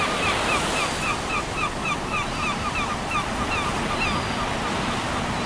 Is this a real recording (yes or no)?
yes